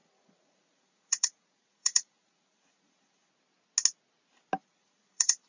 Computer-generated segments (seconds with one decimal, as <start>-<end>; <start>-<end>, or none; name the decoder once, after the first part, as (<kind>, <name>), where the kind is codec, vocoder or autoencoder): 0.0-3.3 (vocoder, Vocos); 4.6-5.5